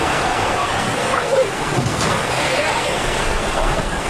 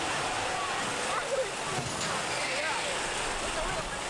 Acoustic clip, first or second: second